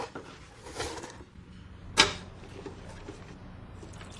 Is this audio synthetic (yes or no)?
no